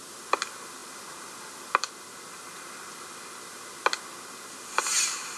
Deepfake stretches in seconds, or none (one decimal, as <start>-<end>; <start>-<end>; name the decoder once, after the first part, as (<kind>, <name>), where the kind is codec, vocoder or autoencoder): none